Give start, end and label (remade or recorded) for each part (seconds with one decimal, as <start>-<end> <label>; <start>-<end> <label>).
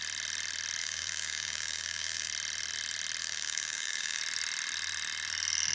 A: 0.0-0.8 recorded; 0.8-2.3 remade; 2.3-3.2 recorded; 3.2-4.2 remade; 4.2-5.7 recorded